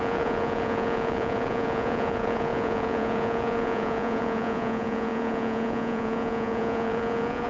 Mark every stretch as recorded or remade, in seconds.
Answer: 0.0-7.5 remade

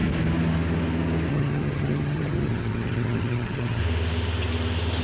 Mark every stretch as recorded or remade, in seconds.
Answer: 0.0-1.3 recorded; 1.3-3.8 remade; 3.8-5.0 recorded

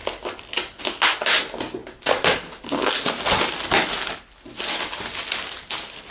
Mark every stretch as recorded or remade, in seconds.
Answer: 0.0-6.1 recorded

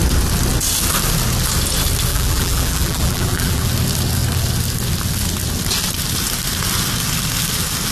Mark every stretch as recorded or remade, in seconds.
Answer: 0.0-2.1 recorded; 2.1-3.7 remade; 3.7-7.9 recorded

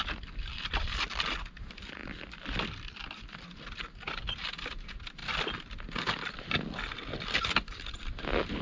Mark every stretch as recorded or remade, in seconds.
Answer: 0.0-2.0 recorded; 2.0-3.2 remade; 3.2-8.6 recorded

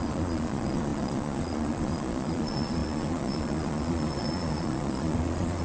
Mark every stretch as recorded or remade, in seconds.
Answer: 0.0-5.6 remade